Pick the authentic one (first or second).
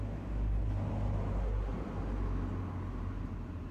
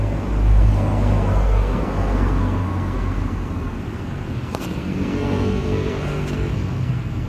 first